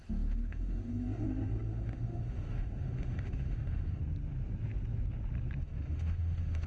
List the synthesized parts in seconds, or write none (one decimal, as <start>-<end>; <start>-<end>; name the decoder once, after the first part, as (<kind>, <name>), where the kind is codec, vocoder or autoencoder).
0.0-4.0 (autoencoder, DAC-VAE); 5.6-6.7